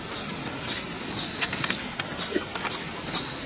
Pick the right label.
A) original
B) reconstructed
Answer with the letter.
A